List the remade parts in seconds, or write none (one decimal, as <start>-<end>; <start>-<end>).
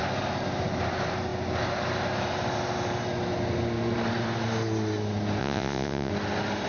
5.4-6.1